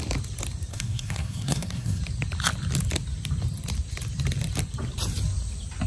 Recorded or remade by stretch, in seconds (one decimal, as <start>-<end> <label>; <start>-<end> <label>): 0.0-0.7 recorded; 0.7-2.0 remade; 2.0-5.9 recorded